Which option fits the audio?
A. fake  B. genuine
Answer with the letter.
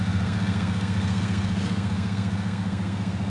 A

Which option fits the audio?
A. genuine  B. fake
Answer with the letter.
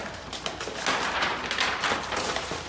A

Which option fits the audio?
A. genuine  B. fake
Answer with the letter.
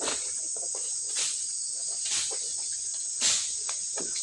B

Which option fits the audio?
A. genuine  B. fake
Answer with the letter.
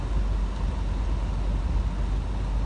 A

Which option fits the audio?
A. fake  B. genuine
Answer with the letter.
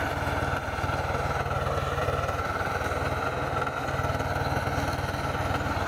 B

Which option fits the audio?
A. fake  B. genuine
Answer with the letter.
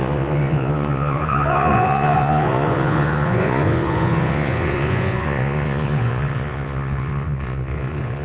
A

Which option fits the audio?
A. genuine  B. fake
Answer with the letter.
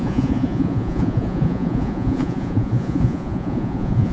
B